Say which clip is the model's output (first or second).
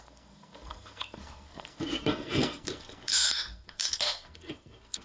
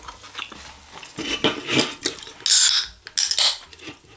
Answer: first